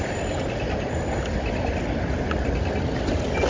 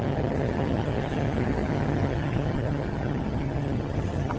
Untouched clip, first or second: first